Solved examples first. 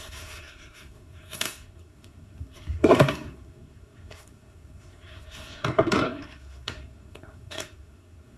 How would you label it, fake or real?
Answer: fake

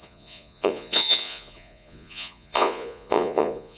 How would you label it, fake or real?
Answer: fake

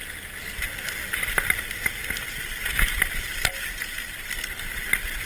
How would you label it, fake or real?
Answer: real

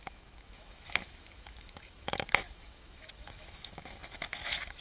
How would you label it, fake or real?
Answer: fake